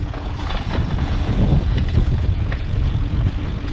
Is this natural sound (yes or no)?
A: no